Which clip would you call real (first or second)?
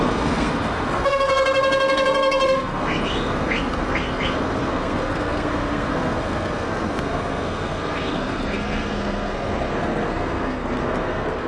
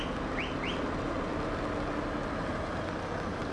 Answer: second